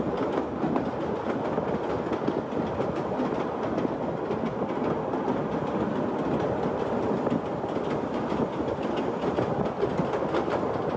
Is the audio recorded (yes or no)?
yes